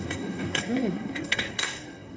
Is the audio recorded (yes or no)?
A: no